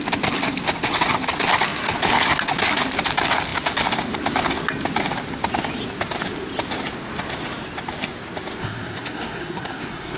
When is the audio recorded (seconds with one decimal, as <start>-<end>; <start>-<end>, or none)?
0.0-8.6